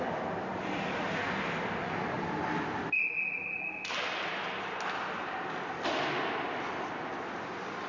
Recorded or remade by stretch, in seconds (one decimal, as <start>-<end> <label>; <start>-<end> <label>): 0.0-7.9 recorded